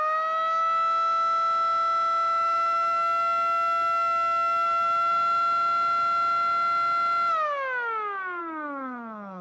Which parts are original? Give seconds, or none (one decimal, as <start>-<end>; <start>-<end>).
0.0-8.4